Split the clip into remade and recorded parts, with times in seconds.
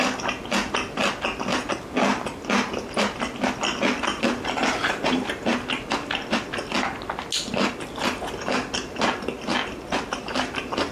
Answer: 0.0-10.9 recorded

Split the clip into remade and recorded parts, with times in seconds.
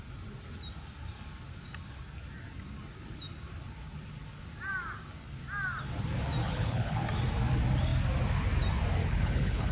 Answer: 0.0-6.4 recorded; 6.4-7.0 remade; 7.0-9.0 recorded; 9.0-9.7 remade